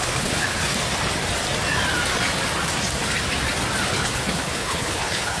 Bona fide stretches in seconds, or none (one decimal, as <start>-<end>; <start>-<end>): 0.7-3.9